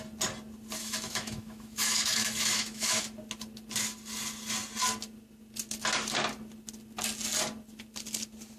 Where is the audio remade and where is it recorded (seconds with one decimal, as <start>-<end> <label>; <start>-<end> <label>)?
0.0-0.8 recorded; 0.8-3.0 remade; 3.0-8.6 recorded